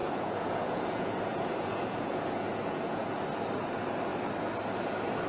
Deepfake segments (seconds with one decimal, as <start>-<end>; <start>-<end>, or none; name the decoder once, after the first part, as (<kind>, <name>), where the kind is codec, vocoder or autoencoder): 0.0-3.2 (vocoder, Vocos)